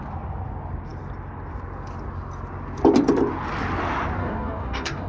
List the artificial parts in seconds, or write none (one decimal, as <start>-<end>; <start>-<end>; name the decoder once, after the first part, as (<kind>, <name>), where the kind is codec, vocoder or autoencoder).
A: 4.2-5.1 (codec, DAC)